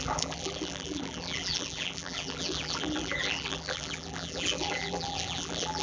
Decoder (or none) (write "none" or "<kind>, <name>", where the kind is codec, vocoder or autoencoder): vocoder, BigVGAN v2